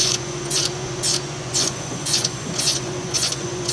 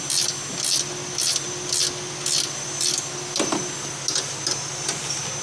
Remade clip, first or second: first